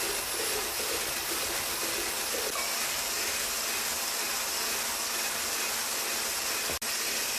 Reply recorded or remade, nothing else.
recorded